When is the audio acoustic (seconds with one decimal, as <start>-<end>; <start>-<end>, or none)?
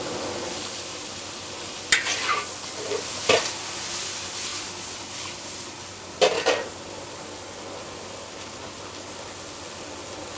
0.0-4.5; 9.4-10.4